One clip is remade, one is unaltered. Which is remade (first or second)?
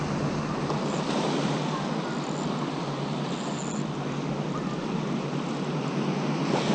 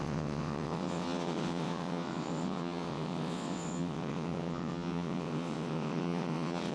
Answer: second